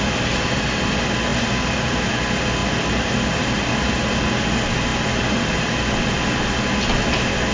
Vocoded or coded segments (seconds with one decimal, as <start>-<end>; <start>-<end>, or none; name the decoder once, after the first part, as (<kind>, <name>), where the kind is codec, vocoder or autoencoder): 1.3-2.1 (vocoder, BigVGAN v2); 2.6-3.6